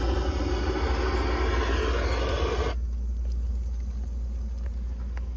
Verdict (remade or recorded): recorded